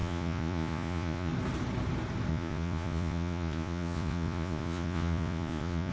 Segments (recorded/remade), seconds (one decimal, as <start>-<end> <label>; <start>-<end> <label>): 0.0-1.3 remade; 1.3-2.3 recorded; 2.3-5.9 remade